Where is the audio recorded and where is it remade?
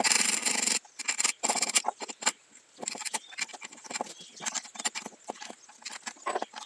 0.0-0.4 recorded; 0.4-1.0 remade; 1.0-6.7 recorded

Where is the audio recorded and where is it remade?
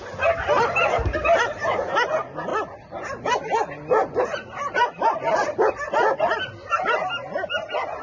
0.0-8.0 recorded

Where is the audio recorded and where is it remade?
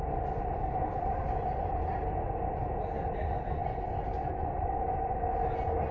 0.0-5.9 recorded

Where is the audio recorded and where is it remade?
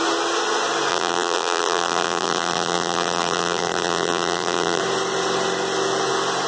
0.0-0.9 recorded; 0.9-4.8 remade; 4.8-6.5 recorded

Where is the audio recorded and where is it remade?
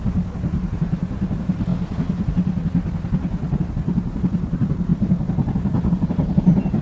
0.0-0.6 recorded; 0.6-1.7 remade; 1.7-3.7 recorded; 3.7-4.9 remade; 4.9-5.9 recorded; 5.9-6.8 remade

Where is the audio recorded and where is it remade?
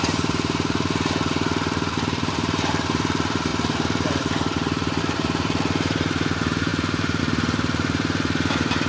0.0-8.9 remade